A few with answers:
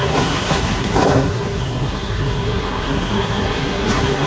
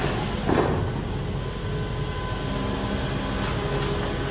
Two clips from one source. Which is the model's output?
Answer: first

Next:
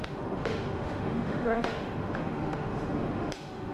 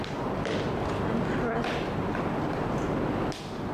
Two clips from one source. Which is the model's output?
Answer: first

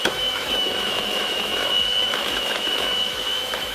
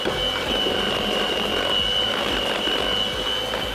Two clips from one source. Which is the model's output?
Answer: first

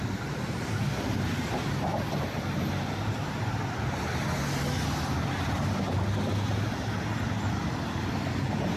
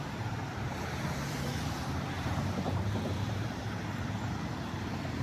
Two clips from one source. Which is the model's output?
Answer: second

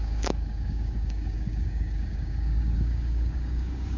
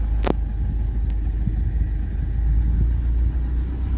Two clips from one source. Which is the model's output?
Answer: first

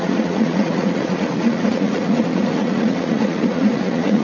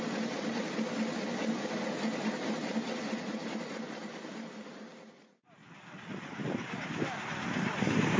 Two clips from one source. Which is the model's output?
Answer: first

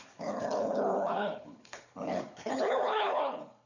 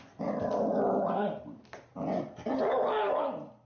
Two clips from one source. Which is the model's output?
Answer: first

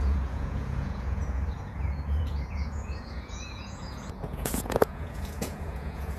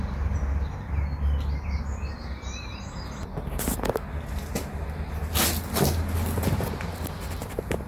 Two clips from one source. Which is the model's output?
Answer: first